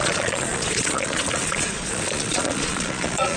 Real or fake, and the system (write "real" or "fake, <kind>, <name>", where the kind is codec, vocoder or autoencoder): fake, vocoder, Vocos